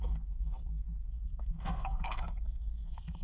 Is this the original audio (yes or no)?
no